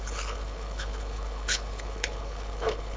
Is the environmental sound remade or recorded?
remade